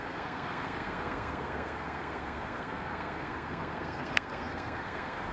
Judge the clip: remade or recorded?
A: remade